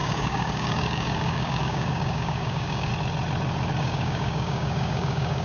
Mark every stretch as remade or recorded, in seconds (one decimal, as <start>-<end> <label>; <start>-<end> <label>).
0.0-2.9 remade; 2.9-3.8 recorded; 3.8-5.4 remade